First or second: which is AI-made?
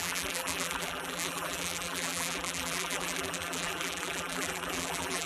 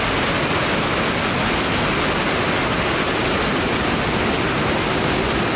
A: first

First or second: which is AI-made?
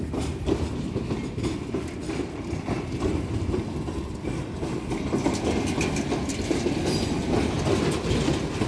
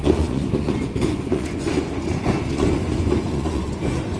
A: second